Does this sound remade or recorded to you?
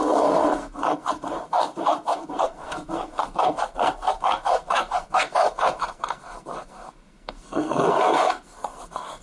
remade